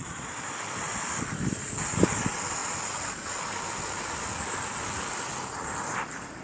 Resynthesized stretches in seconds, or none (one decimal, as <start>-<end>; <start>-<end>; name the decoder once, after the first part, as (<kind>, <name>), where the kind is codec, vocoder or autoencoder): 0.0-0.5 (vocoder, Vocos)